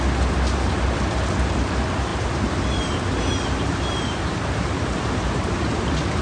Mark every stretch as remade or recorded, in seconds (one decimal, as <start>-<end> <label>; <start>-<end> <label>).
0.0-2.1 recorded; 2.1-5.8 remade; 5.8-6.2 recorded